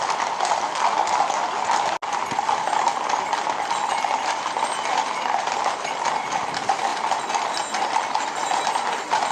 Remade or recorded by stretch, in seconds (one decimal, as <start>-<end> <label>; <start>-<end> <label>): 0.0-9.3 recorded